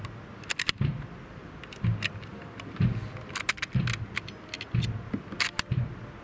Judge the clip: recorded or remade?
recorded